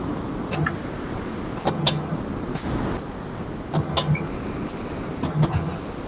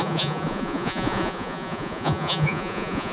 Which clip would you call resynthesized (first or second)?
second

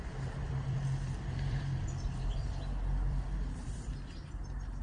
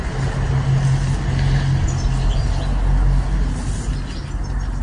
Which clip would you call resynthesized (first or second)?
first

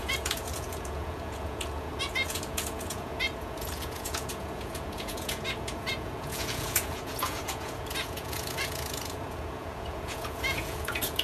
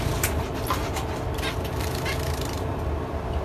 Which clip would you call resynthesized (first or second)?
first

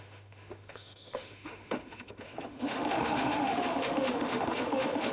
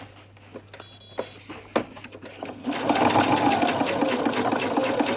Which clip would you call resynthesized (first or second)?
first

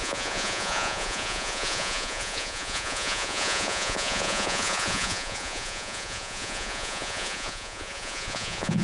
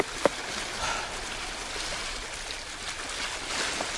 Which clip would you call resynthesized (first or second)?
first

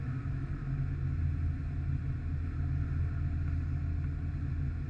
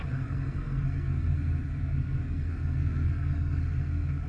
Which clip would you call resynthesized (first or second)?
second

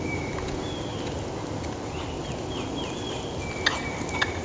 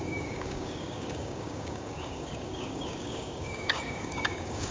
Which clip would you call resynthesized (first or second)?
second